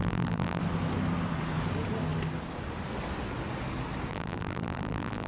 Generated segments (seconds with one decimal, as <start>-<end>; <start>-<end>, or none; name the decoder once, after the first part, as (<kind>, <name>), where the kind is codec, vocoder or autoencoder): 0.0-0.6 (vocoder, BigVGAN v2); 4.1-5.3